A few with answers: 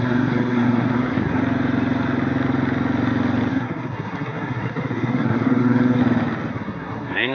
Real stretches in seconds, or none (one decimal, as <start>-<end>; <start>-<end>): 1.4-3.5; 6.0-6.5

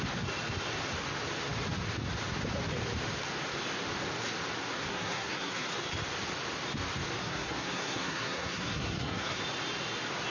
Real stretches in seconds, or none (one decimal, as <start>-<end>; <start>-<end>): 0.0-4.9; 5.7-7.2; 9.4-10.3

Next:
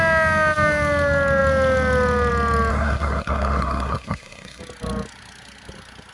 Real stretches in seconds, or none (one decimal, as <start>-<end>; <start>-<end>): 0.0-2.7; 4.6-6.1

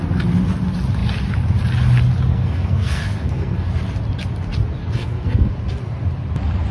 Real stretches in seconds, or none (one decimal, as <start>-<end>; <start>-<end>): 0.0-2.3; 3.7-4.8; 5.5-6.7

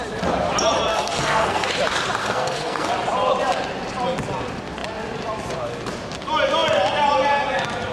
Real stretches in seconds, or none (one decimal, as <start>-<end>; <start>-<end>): 0.0-0.9; 1.7-2.2; 2.9-7.9